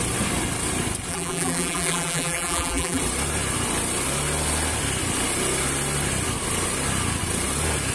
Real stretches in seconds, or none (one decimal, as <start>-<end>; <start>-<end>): 0.0-1.1; 3.0-7.9